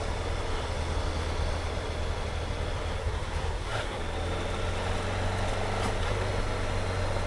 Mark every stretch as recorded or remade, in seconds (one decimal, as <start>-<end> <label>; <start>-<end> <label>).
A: 0.0-3.0 recorded; 3.0-4.0 remade; 4.0-7.3 recorded